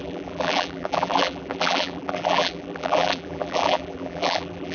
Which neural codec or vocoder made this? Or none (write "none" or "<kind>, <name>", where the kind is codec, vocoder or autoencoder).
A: vocoder, BigVGAN v2